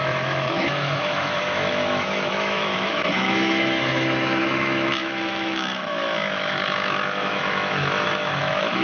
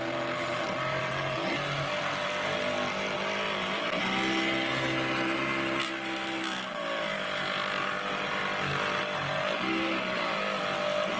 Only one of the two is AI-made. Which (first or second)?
first